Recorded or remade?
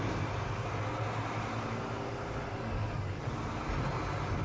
recorded